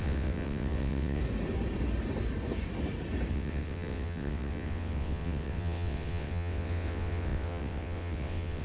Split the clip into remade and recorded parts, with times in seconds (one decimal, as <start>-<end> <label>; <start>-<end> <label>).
0.0-1.2 remade; 1.2-3.3 recorded; 3.3-8.6 remade